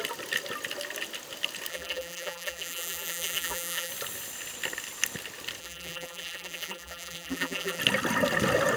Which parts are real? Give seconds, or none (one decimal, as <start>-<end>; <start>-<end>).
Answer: 0.0-1.7; 3.9-5.6; 7.8-8.8